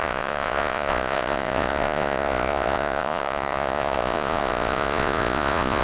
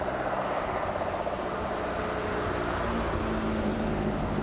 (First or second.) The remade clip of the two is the first